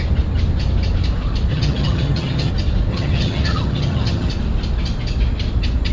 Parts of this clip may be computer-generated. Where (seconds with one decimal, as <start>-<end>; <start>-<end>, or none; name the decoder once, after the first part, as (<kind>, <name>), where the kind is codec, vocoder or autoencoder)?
1.5-2.5 (vocoder, HiFi-GAN); 2.9-4.3